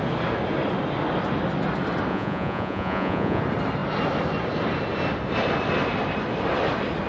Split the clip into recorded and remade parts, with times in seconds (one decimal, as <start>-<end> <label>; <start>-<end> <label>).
0.0-2.1 recorded; 2.1-3.4 remade; 3.4-7.1 recorded